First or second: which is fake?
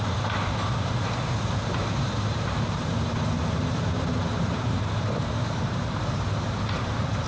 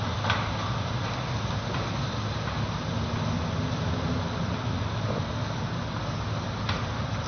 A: first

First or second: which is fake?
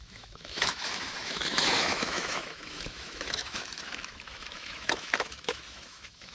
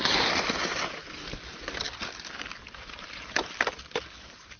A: first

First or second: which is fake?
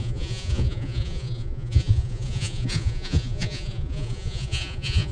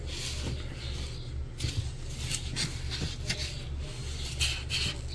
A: first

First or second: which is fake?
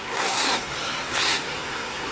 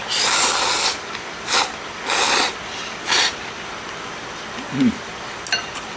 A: first